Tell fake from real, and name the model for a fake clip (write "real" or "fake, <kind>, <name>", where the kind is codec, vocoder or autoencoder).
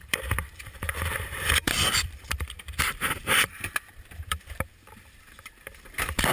fake, vocoder, BigVGAN v2